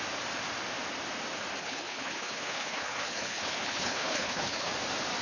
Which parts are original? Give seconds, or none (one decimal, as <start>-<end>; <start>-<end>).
0.0-1.6; 4.7-5.2